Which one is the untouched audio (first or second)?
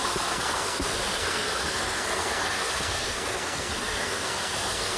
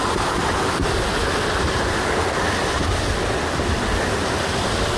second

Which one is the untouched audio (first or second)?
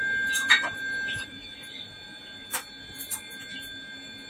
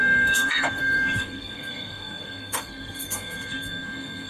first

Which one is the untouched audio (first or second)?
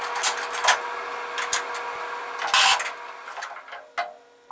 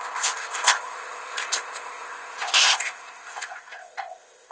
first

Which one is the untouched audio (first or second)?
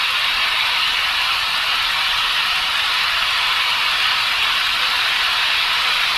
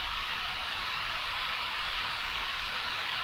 first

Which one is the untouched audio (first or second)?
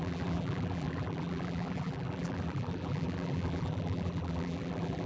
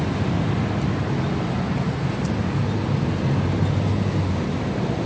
second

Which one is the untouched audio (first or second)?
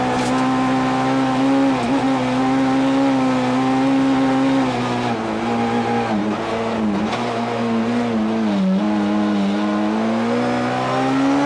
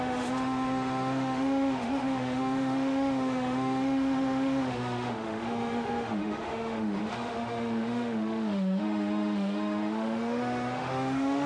first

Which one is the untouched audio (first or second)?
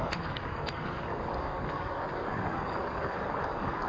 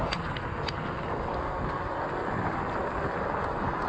second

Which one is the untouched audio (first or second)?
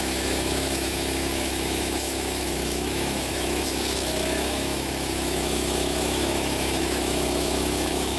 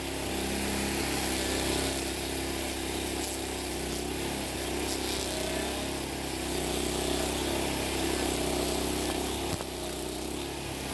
second